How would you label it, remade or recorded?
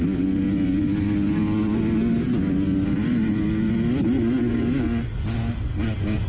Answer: recorded